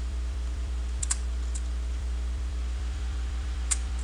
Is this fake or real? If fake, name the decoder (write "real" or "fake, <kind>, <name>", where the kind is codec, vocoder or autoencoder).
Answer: fake, vocoder, BigVGAN v2